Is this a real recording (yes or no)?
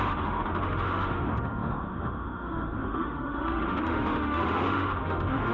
no